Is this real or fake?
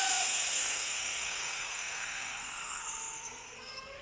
fake